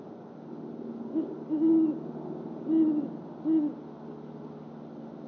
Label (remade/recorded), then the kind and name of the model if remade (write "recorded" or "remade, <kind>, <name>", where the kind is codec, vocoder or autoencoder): recorded